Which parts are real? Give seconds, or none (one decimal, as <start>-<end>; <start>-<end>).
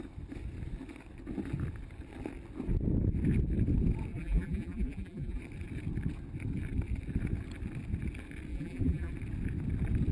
0.0-4.1; 5.4-8.5; 9.1-10.1